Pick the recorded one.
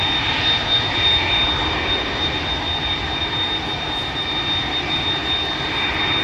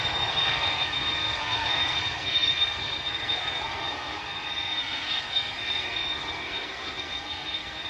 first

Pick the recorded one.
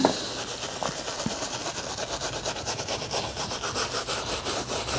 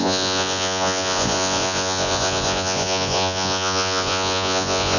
first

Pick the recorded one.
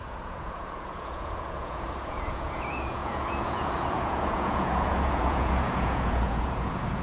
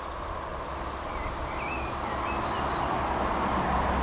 second